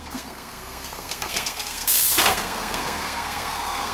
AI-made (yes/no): yes